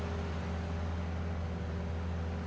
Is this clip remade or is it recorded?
recorded